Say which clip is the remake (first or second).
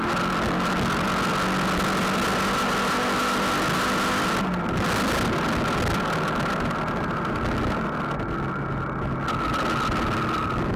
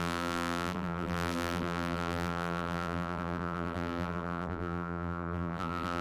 second